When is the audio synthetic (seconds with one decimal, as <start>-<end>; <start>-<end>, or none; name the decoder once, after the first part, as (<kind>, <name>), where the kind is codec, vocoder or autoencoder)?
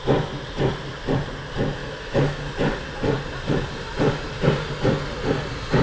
1.8-2.4 (autoencoder, DAC-VAE)